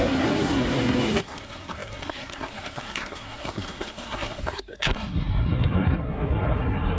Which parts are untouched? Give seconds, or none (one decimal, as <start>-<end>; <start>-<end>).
none